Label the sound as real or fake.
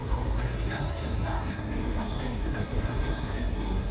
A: fake